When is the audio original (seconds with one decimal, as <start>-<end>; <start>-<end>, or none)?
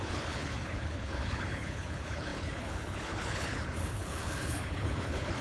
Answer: none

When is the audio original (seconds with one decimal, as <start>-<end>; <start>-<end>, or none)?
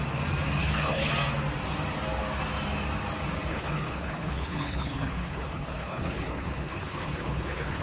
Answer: 0.0-0.6; 1.1-3.5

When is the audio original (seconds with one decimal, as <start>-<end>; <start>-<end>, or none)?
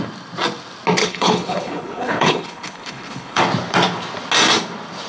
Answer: 0.0-1.0; 3.4-5.1